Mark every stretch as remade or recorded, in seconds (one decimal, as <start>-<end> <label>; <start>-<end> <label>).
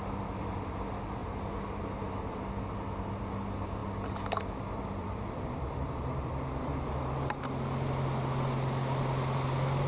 0.0-3.8 recorded; 3.8-7.4 remade; 7.4-9.9 recorded